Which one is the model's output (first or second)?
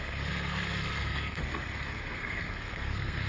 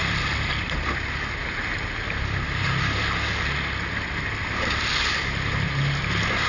first